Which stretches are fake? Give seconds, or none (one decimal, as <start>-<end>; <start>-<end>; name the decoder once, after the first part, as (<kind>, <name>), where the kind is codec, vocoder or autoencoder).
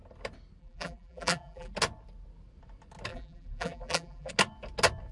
0.6-1.7 (vocoder, BigVGAN v2); 3.1-4.3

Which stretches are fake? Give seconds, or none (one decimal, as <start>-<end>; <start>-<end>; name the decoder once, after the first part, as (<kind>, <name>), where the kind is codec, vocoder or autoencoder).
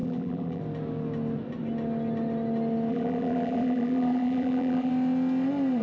0.0-0.6 (vocoder, BigVGAN v2); 2.9-4.9